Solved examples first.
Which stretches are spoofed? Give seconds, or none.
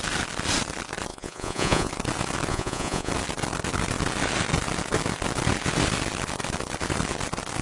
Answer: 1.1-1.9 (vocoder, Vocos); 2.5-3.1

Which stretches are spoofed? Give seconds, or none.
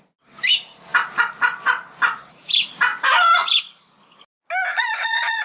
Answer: 4.7-5.4 (vocoder, Vocos)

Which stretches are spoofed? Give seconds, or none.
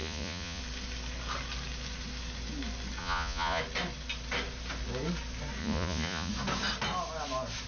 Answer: 0.0-0.6 (vocoder, Vocos); 3.0-3.6; 5.6-6.3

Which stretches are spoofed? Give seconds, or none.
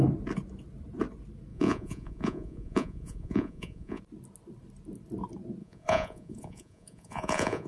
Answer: 1.5-4.0 (vocoder, Vocos); 5.6-7.7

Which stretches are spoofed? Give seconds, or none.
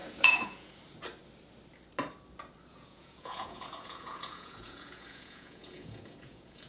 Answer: 0.0-0.7 (vocoder, Vocos); 2.7-6.7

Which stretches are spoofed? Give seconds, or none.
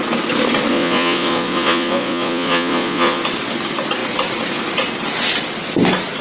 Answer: 0.7-3.2 (vocoder, Vocos)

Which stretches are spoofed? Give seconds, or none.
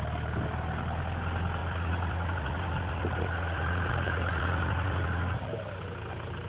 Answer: 1.6-5.5 (vocoder, Vocos)